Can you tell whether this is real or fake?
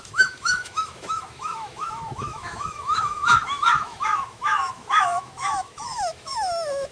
fake